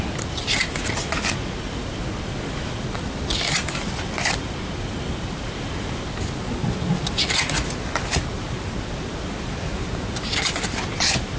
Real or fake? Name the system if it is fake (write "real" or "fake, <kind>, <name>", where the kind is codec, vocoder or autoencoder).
real